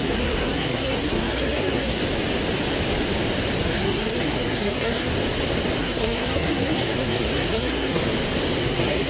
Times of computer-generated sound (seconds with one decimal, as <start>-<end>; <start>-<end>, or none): 0.0-2.0; 3.6-5.1; 5.8-8.0; 8.6-9.1